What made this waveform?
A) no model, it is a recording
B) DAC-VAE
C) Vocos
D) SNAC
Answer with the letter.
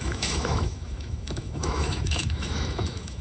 B